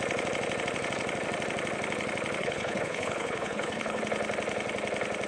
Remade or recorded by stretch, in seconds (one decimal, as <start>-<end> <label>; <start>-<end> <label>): 0.0-2.4 recorded; 2.4-4.0 remade; 4.0-5.3 recorded